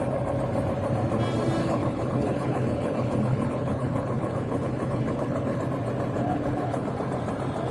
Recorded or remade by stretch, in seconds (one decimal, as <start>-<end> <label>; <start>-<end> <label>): 0.0-1.6 recorded; 1.6-5.6 remade; 5.6-6.2 recorded; 6.2-6.9 remade; 6.9-7.7 recorded